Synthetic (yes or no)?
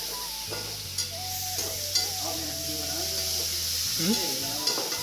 no